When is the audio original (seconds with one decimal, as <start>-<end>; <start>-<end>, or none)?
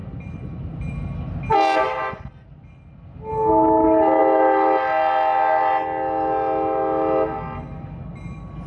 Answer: 0.0-8.7